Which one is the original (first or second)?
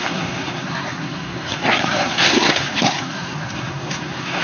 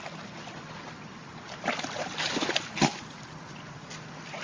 second